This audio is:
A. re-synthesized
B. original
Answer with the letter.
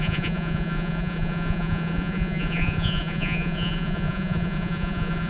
A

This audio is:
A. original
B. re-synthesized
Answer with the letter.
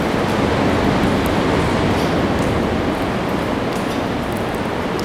A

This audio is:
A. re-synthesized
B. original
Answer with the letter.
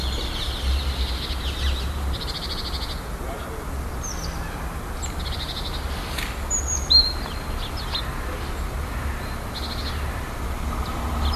B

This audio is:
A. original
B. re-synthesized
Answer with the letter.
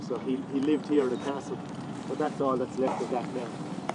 B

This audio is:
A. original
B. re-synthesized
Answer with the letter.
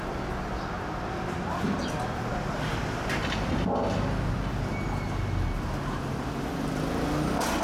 A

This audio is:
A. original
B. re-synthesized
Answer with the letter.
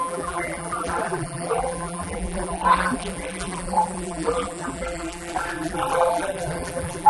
B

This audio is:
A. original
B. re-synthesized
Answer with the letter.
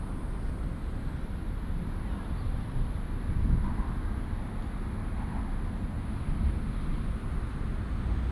A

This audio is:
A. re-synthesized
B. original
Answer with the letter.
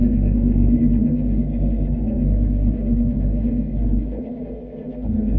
A